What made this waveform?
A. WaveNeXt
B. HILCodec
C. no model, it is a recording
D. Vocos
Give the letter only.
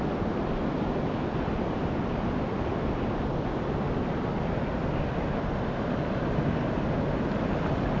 C